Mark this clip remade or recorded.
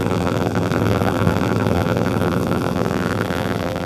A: remade